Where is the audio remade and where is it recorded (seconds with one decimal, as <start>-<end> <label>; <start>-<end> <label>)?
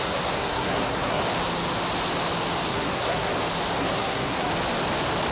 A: 0.0-1.2 remade; 1.2-2.7 recorded; 2.7-3.3 remade; 3.3-3.8 recorded; 3.8-4.5 remade; 4.5-5.3 recorded